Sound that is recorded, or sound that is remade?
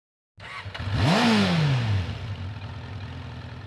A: recorded